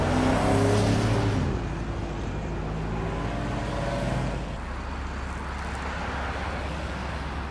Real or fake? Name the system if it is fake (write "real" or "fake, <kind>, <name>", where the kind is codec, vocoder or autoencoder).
real